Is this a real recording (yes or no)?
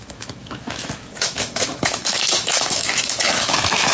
no